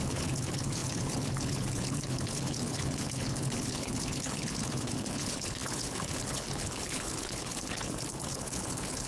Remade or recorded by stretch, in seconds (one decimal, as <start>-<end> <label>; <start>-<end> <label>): 0.0-9.1 remade